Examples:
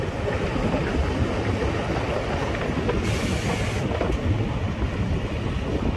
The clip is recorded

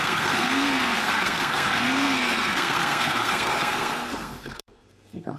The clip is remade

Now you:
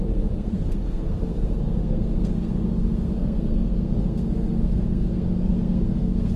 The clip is remade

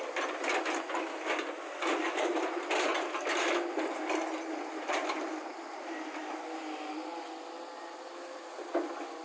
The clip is recorded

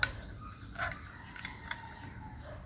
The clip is recorded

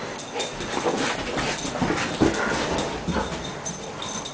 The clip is recorded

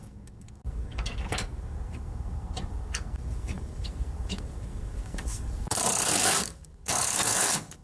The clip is remade